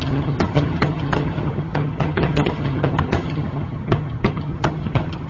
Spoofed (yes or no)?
yes